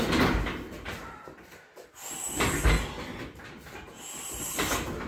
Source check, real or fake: real